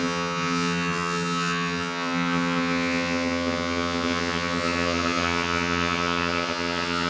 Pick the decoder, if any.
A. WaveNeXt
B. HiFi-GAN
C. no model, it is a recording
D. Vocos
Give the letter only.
B